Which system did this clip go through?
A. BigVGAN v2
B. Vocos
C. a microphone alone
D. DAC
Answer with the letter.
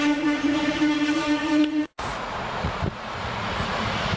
B